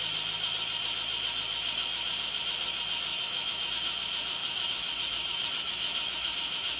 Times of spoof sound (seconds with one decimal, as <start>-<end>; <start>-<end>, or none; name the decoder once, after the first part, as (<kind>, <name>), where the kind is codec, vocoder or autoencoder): 3.1-3.7 (autoencoder, DAC-VAE); 4.4-6.8

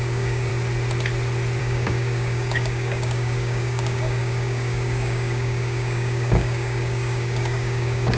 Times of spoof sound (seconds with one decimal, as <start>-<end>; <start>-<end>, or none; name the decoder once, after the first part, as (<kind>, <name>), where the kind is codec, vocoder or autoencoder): 0.0-0.5 (codec, DAC); 1.6-8.2